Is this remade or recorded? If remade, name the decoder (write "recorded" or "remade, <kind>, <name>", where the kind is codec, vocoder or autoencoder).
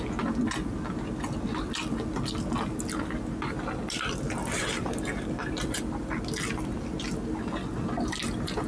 recorded